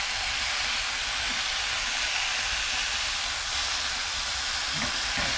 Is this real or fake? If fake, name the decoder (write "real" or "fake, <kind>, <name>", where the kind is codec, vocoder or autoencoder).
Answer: real